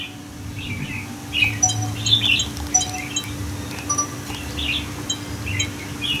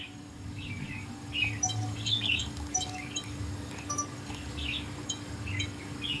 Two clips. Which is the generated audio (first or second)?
second